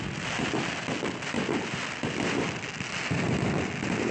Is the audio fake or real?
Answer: real